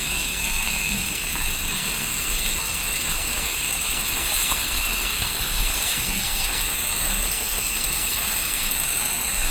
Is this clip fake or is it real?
fake